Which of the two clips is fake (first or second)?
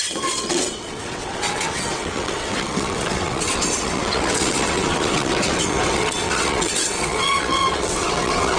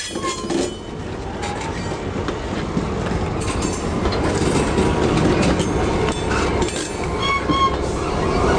first